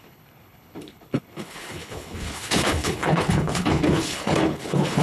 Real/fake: fake